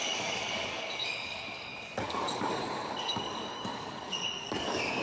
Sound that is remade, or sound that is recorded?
remade